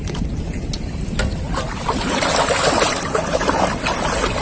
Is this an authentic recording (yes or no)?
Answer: yes